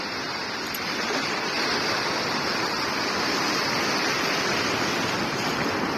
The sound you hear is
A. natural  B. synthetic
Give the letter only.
B